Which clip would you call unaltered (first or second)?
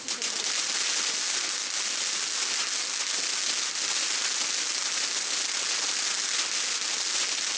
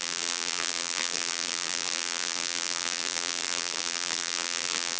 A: first